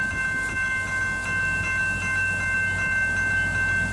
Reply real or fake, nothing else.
real